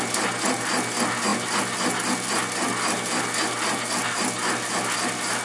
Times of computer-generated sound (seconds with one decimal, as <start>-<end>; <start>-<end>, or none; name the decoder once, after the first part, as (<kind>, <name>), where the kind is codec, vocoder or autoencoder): none